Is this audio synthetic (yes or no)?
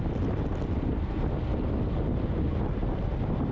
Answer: no